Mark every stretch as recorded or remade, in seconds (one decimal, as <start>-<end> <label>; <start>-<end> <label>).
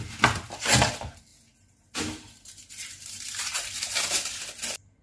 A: 0.0-1.3 recorded; 1.3-3.9 remade; 3.9-5.0 recorded